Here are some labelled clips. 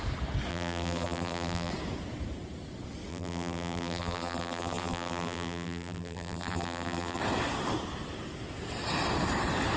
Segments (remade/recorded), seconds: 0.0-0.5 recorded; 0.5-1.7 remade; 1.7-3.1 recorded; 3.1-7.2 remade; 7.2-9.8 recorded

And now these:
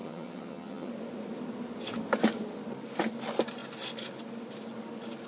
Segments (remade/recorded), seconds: 0.0-0.9 remade; 0.9-5.3 recorded

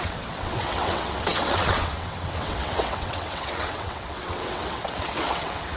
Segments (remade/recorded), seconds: 0.0-5.8 remade

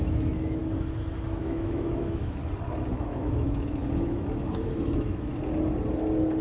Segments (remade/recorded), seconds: 0.0-0.6 remade; 0.6-1.4 recorded; 1.4-2.4 remade; 2.4-2.9 recorded; 2.9-5.3 remade; 5.3-6.4 recorded

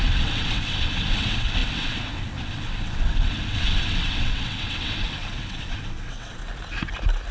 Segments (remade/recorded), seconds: 0.0-6.4 remade; 6.4-7.3 recorded